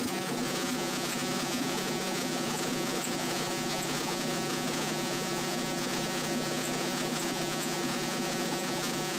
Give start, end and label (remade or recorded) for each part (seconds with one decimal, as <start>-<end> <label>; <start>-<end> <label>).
0.0-9.2 remade